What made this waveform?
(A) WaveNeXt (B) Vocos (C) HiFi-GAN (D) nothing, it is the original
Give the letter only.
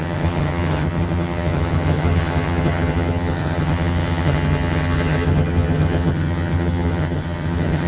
C